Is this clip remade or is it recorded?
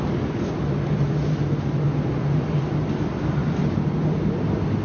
recorded